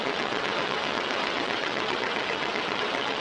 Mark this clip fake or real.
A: fake